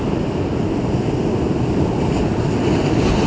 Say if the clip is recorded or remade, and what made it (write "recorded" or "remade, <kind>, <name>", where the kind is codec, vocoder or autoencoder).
recorded